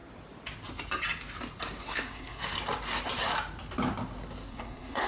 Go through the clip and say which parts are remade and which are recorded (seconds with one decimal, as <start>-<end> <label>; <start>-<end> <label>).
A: 0.0-1.8 recorded; 1.8-2.4 remade; 2.4-4.5 recorded; 4.5-5.1 remade